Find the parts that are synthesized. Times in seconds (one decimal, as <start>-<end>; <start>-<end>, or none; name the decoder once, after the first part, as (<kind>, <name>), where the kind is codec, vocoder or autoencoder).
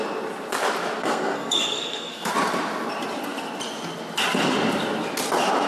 1.0-2.3 (codec, SNAC)